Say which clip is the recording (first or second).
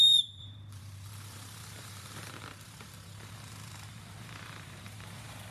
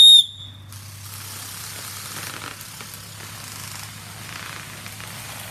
second